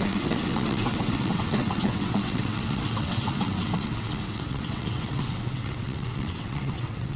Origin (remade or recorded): remade